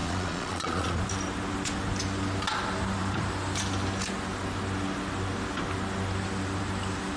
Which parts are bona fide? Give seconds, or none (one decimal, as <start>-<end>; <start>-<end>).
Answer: 1.0-7.2